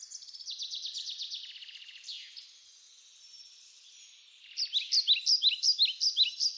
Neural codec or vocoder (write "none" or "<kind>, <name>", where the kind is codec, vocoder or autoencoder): none